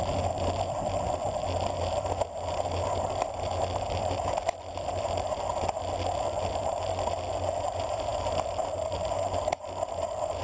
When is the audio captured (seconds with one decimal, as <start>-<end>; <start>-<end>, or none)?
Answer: 0.0-10.4

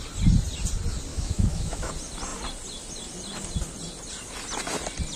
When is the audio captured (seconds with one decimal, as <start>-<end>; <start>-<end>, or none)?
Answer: 0.0-1.1; 1.9-5.2

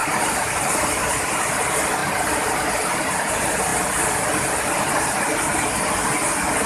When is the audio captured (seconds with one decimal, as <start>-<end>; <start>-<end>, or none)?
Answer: 0.0-6.7

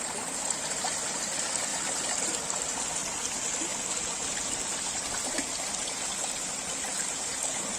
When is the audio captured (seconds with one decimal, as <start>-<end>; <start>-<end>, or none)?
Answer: 0.0-7.8

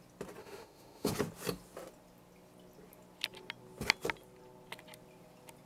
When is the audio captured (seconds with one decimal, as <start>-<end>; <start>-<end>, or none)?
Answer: 0.0-0.4; 1.1-5.7